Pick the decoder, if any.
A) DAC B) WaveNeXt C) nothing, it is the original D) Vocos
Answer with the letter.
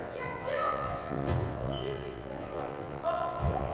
B